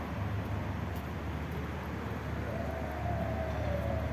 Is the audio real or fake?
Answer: real